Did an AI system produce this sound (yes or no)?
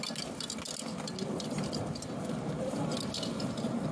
no